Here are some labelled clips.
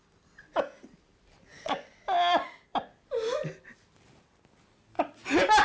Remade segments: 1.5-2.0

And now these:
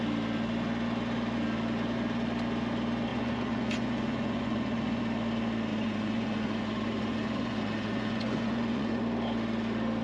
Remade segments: 3.1-5.0; 5.7-9.0

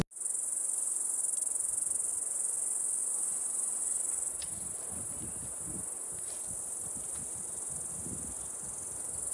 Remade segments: 0.6-1.2; 3.1-3.8